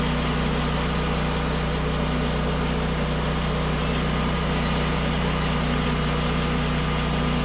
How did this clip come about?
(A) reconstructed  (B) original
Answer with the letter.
B